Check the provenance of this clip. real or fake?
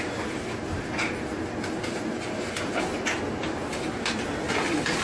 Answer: real